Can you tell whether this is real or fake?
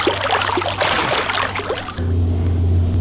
real